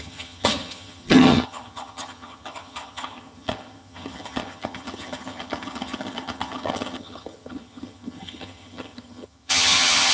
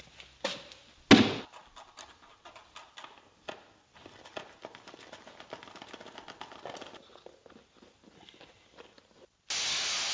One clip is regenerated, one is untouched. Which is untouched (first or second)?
second